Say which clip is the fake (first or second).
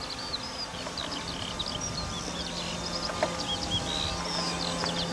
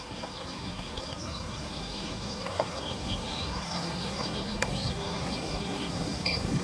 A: second